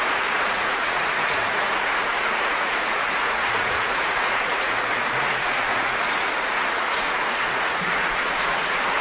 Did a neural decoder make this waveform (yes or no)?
yes